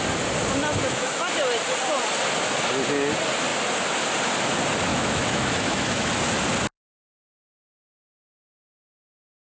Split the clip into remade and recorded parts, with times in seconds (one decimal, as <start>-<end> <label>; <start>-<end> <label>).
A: 0.0-0.7 recorded; 0.7-1.3 remade; 1.3-4.9 recorded; 4.9-6.1 remade; 6.1-9.4 recorded